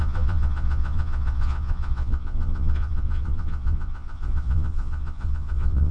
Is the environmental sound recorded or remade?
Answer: remade